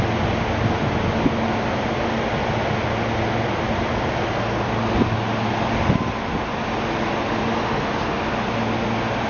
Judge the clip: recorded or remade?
recorded